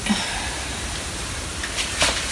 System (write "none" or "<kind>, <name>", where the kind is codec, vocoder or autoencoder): none